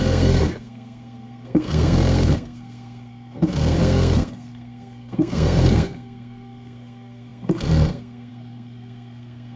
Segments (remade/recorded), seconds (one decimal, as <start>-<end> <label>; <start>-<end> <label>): 0.0-9.6 remade